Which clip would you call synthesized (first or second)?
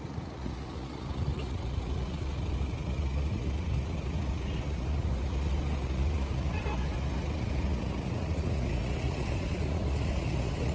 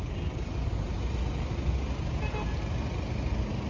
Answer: first